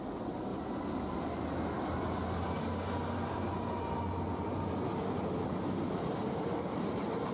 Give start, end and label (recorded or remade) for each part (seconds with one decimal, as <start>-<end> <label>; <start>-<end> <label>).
0.0-7.3 recorded